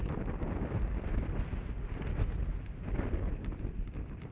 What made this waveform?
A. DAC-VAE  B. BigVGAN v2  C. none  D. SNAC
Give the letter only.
C